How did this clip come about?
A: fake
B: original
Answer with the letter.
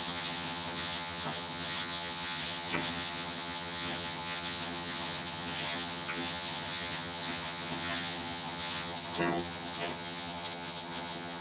A